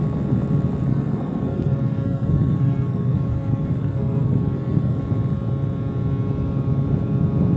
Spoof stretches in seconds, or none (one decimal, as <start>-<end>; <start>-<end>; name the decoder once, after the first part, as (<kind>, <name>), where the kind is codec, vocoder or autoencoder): 0.9-5.0 (codec, SNAC)